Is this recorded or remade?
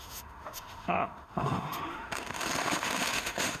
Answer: remade